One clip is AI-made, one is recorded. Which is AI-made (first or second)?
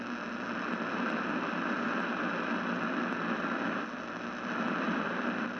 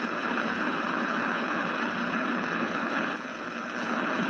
second